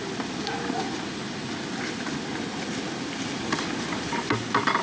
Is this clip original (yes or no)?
yes